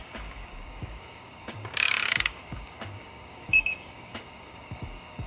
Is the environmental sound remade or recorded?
remade